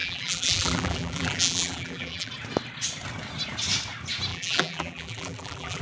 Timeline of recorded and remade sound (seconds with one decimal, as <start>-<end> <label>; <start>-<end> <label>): 0.0-2.3 remade; 2.3-4.3 recorded; 4.3-5.8 remade